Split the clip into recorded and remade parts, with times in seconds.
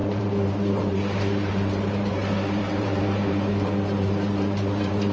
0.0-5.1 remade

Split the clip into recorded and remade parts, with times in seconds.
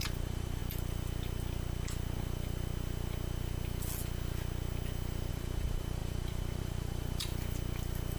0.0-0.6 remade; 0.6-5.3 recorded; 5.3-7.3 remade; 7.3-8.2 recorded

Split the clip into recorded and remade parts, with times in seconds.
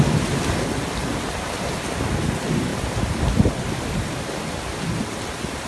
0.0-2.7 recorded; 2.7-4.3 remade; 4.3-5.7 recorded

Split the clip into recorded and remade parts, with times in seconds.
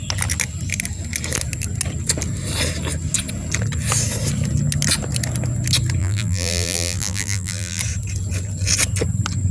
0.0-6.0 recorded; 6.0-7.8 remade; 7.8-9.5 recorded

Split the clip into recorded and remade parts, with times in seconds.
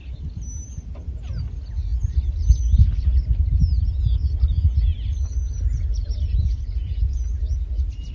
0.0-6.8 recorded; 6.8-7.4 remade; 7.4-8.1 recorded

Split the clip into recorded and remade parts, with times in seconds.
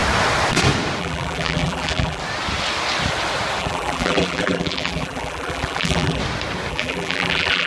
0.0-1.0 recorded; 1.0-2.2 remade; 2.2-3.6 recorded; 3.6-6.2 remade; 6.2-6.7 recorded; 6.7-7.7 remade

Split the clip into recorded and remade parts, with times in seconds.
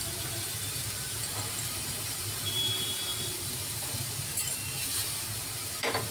0.0-6.1 remade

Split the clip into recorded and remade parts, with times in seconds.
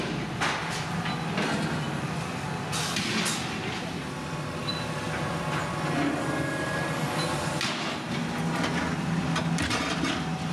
0.0-10.5 recorded